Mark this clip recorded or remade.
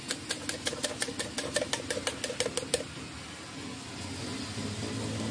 recorded